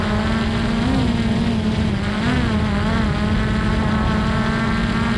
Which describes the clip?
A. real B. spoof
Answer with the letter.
A